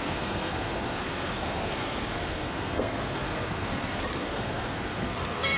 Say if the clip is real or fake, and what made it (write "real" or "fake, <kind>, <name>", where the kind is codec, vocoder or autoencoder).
fake, codec, SNAC